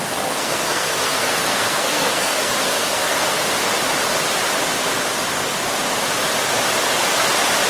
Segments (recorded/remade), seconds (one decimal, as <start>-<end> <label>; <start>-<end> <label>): 0.0-3.4 remade; 3.4-7.7 recorded